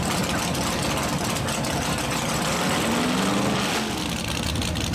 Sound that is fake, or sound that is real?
real